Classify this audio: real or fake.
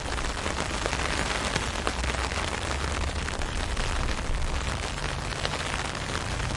real